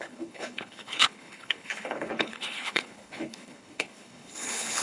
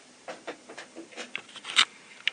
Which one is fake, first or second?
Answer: first